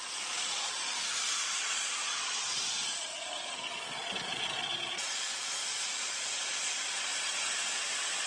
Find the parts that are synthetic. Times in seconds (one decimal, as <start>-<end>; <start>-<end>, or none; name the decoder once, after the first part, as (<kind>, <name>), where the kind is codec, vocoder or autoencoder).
0.0-8.3 (vocoder, Vocos)